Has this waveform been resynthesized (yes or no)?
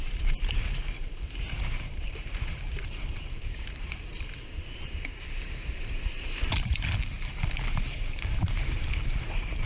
yes